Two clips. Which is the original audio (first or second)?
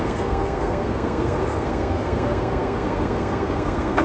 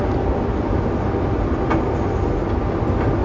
second